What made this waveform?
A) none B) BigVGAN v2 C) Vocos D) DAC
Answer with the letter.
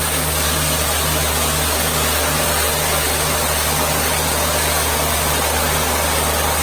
A